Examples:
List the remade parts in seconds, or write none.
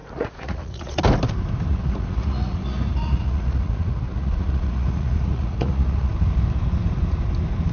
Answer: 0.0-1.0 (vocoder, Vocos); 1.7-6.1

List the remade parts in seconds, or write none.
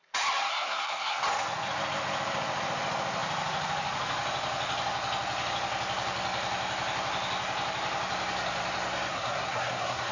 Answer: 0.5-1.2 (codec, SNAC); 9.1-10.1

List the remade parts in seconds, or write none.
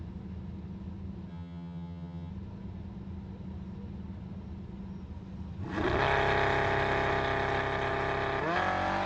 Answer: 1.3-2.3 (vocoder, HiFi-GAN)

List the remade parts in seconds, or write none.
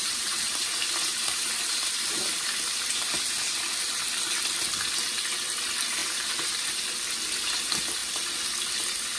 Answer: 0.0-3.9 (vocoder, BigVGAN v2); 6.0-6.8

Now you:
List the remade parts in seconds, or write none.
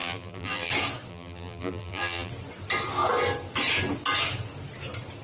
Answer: 0.0-0.7 (vocoder, BigVGAN v2); 1.1-2.3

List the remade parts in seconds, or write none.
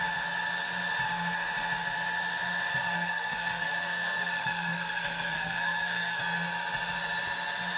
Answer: 2.7-6.2 (codec, SNAC)